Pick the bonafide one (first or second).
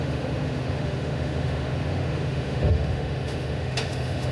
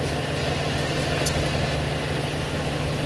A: second